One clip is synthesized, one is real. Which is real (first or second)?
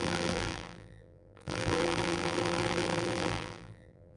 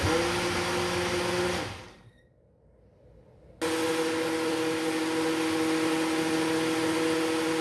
second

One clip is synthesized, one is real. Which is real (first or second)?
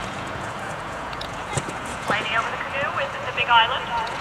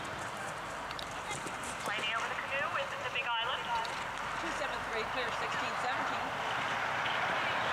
second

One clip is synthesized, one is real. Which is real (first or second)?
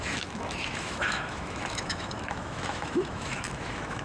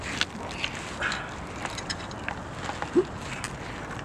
second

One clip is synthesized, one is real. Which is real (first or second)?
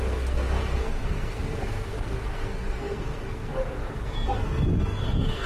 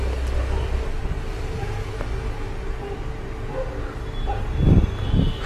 second